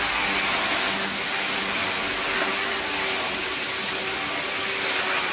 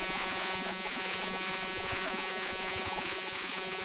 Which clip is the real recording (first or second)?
first